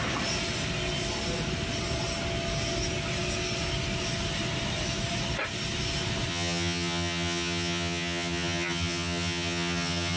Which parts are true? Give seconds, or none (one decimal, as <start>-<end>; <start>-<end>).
0.0-6.3